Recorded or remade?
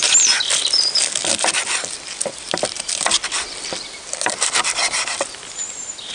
recorded